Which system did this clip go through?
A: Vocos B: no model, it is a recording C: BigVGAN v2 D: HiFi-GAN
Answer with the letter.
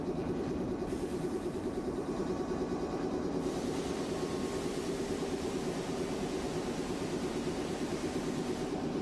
C